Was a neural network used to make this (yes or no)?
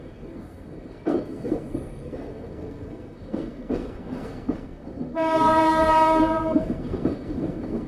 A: yes